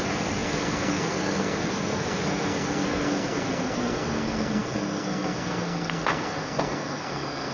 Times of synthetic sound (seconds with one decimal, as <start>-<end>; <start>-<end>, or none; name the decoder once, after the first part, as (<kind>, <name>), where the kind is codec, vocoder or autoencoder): 0.0-7.5 (codec, SNAC)